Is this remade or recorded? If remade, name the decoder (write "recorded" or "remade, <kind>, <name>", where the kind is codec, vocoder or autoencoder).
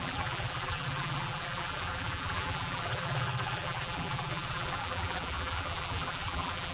remade, vocoder, BigVGAN v2